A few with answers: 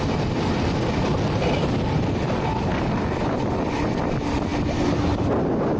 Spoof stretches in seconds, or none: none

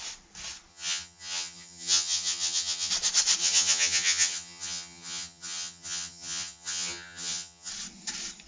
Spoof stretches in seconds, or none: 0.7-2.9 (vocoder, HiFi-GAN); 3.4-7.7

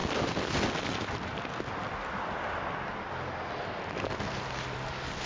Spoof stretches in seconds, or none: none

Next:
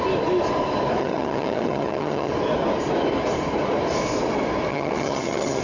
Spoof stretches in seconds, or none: 1.0-2.3 (vocoder, HiFi-GAN); 4.7-5.6

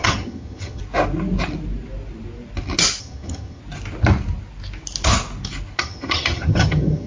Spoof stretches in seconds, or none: 0.0-0.8 (vocoder, HiFi-GAN); 3.0-3.6; 5.8-7.1

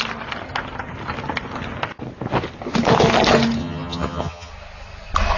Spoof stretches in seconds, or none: 3.6-4.5 (vocoder, HiFi-GAN)